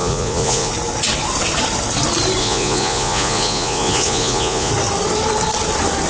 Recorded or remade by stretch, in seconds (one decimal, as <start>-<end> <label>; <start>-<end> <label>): 0.0-0.7 remade; 0.7-2.4 recorded; 2.4-4.7 remade; 4.7-6.1 recorded